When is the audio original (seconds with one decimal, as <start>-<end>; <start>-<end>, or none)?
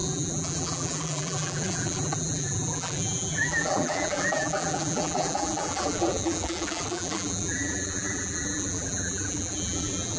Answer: none